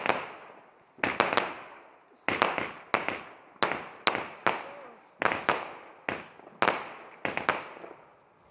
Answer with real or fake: real